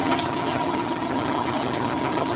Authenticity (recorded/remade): remade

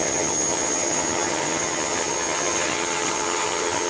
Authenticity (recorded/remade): remade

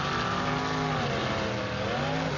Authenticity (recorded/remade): recorded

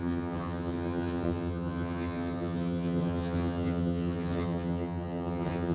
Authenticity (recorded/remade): remade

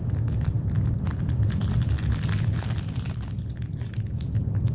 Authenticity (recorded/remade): recorded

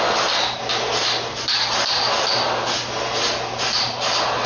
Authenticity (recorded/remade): recorded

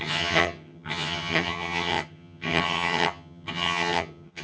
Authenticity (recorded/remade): remade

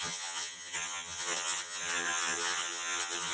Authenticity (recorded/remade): remade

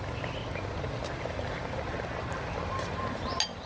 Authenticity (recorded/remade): recorded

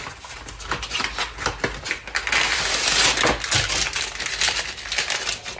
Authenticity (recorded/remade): recorded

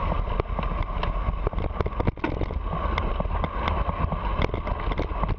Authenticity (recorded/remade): recorded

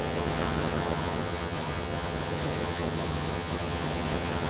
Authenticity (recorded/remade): remade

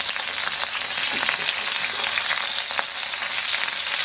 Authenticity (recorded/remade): recorded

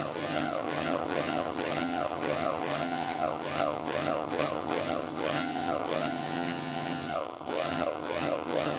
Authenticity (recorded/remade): remade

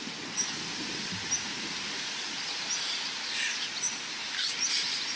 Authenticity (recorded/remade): recorded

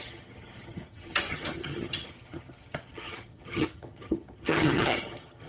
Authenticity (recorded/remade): remade